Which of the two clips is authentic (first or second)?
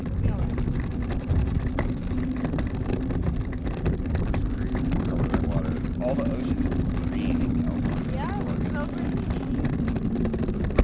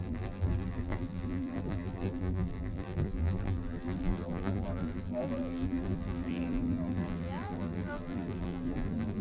first